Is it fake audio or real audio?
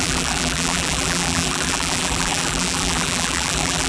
fake